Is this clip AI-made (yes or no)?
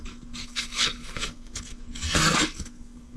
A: yes